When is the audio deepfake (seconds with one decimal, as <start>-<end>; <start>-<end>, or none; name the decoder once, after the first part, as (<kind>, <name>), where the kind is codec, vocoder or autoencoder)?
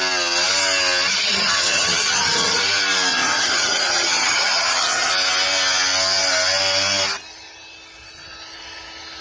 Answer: 1.1-2.6 (vocoder, HiFi-GAN); 3.1-5.1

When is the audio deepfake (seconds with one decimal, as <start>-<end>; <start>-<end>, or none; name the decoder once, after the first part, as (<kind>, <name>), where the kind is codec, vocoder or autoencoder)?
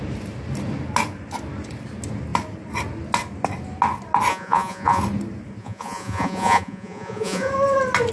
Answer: 4.3-5.0 (vocoder, Vocos); 5.6-7.5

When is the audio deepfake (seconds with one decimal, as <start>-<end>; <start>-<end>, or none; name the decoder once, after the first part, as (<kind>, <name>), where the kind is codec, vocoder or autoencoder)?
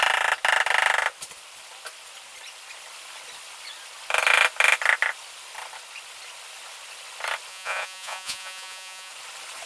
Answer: 7.5-9.1 (vocoder, Vocos)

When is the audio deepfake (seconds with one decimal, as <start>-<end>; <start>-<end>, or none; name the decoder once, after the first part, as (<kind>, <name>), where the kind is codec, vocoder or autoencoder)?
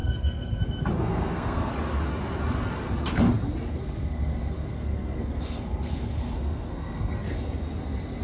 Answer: 0.0-0.6 (codec, SNAC); 1.0-1.7; 3.8-7.2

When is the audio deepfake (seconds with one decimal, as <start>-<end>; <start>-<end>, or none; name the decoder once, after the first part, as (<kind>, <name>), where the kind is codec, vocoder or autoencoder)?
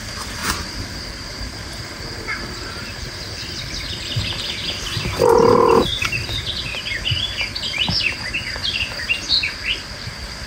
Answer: 0.4-3.9 (vocoder, BigVGAN v2); 5.9-6.6; 8.6-9.1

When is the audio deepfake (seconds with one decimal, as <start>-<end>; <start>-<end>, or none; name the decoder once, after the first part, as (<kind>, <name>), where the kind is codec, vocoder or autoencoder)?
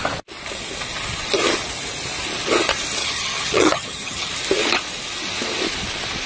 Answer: 3.0-4.3 (vocoder, HiFi-GAN)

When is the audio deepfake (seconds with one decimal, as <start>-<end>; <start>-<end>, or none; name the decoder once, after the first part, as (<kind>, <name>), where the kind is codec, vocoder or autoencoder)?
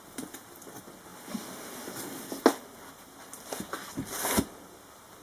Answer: none